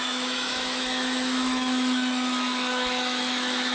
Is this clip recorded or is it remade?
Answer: remade